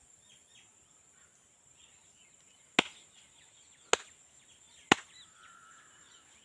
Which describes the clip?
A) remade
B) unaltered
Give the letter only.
B